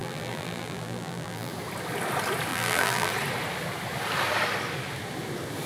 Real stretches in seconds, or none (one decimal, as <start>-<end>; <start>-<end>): 1.5-2.5; 3.1-5.7